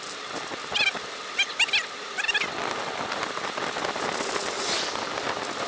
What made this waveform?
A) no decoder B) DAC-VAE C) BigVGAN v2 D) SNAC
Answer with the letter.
A